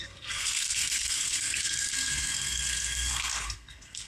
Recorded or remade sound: remade